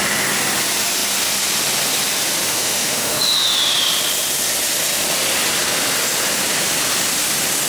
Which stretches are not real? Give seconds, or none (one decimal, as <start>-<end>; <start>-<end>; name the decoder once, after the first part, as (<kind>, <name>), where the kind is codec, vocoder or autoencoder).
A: 2.5-3.2 (autoencoder, DAC-VAE)